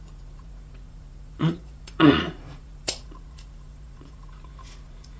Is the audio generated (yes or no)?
yes